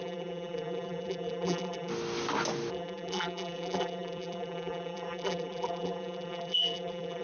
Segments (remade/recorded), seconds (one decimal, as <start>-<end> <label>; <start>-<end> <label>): 0.0-1.9 remade; 1.9-2.7 recorded; 2.7-7.2 remade